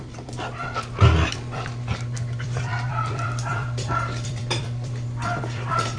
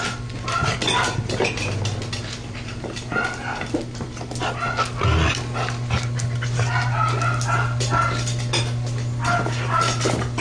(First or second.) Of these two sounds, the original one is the second